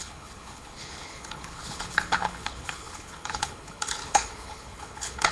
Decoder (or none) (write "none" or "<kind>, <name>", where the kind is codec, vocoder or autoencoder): codec, HILCodec